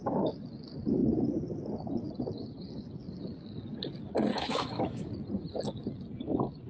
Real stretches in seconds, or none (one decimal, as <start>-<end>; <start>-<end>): 0.0-4.3; 5.1-6.7